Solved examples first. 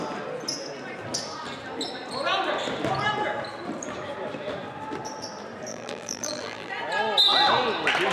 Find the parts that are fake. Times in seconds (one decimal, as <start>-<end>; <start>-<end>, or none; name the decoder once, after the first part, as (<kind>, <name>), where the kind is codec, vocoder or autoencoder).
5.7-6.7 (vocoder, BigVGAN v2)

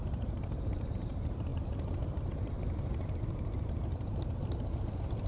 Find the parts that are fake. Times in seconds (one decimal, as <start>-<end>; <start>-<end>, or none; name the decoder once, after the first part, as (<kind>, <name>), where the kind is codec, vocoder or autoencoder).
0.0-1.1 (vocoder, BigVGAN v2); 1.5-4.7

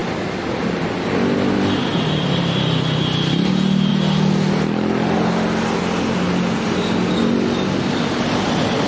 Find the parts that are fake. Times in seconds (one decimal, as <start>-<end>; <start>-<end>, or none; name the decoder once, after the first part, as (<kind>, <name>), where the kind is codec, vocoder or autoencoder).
1.9-3.5 (vocoder, BigVGAN v2)

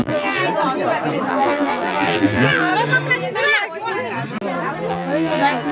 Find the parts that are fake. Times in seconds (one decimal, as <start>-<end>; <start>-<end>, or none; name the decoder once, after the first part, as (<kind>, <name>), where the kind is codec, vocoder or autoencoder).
0.0-0.4 (vocoder, BigVGAN v2); 1.3-2.7; 4.9-5.7

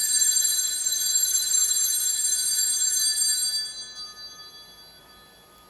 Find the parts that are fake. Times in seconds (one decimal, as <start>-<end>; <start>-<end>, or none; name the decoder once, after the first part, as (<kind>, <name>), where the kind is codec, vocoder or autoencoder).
0.0-1.6 (vocoder, BigVGAN v2); 5.0-5.7